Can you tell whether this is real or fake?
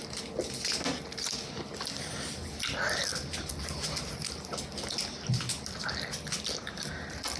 real